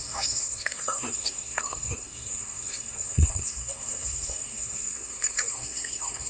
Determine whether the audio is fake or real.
fake